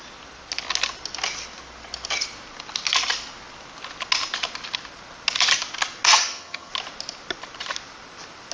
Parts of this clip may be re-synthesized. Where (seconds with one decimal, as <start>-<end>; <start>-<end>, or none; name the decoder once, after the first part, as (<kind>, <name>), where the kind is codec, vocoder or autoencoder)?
6.1-6.7 (vocoder, HiFi-GAN)